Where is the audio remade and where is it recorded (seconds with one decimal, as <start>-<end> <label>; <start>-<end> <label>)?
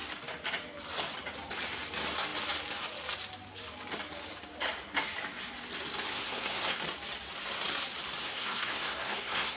0.0-6.1 recorded; 6.1-6.8 remade; 6.8-8.2 recorded; 8.2-9.6 remade